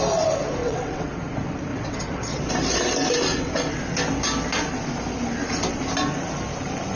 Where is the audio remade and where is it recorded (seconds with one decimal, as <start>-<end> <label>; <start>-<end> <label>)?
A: 0.0-0.6 recorded; 0.6-1.1 remade; 1.1-1.7 recorded; 1.7-2.5 remade; 2.5-3.3 recorded; 3.3-3.8 remade; 3.8-7.0 recorded